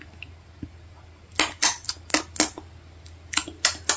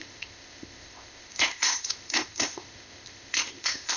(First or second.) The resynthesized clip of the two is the second